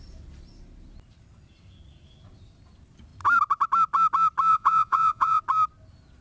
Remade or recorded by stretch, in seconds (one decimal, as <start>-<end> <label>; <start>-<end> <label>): 0.0-4.5 recorded; 4.5-5.4 remade; 5.4-6.2 recorded